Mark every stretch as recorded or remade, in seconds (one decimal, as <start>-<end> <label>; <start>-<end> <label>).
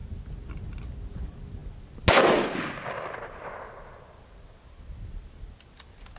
0.0-6.2 recorded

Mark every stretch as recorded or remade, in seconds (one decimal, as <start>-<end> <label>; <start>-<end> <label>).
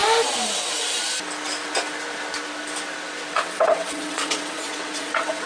0.0-3.3 recorded; 3.3-5.5 remade